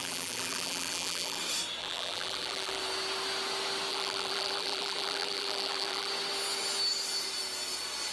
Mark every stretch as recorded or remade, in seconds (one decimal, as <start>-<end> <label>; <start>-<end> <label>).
0.0-1.4 remade; 1.4-1.8 recorded; 1.8-2.8 remade; 2.8-3.9 recorded; 3.9-6.1 remade; 6.1-8.1 recorded